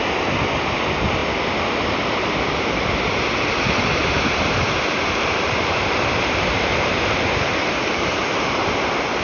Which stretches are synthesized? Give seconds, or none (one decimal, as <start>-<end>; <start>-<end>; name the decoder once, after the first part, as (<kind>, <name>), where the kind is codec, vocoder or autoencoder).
4.0-8.2 (vocoder, BigVGAN v2)